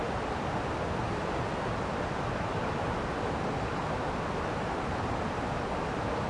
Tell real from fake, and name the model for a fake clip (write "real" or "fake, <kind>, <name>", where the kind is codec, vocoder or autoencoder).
real